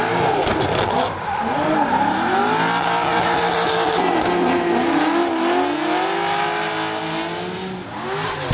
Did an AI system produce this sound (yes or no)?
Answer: no